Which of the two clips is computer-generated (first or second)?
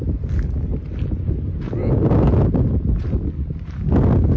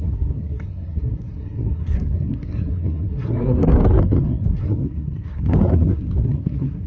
second